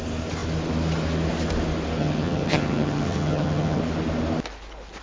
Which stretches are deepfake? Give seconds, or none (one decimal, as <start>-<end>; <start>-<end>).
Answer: 2.0-3.8